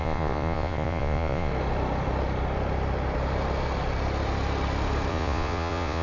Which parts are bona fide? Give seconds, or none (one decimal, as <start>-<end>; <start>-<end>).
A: 1.5-5.1